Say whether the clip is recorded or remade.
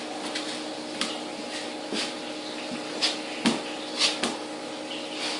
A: recorded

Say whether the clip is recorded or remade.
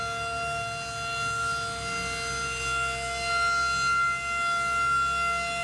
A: recorded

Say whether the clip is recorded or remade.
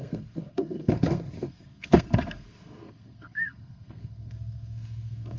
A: remade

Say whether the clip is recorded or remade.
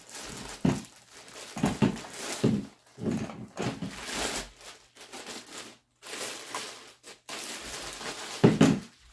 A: recorded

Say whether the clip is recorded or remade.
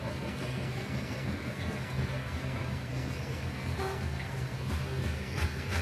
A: remade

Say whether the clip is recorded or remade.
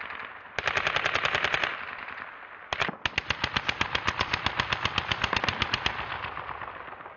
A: recorded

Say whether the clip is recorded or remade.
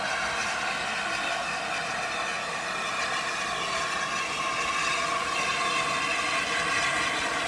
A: recorded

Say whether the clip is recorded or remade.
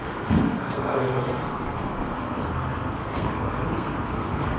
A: remade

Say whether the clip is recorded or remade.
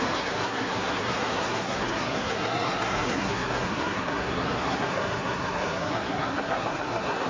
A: remade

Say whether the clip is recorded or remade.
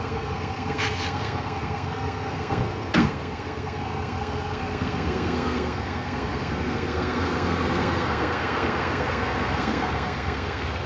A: remade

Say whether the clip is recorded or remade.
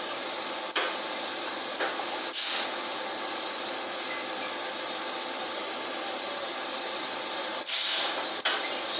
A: recorded